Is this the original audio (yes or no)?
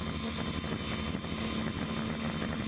yes